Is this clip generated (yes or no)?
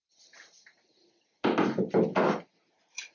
no